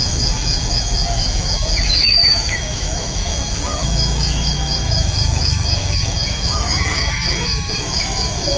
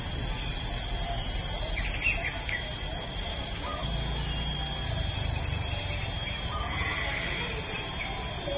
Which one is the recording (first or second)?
second